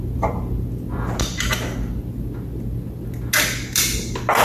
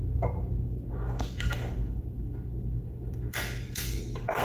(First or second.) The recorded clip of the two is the first